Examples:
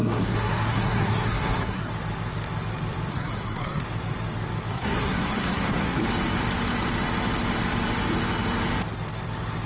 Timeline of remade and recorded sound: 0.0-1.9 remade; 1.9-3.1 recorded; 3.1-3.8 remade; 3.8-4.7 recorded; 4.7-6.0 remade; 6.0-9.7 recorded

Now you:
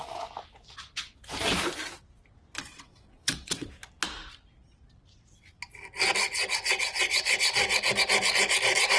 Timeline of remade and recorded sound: 0.0-2.7 recorded; 2.7-3.7 remade; 3.7-9.0 recorded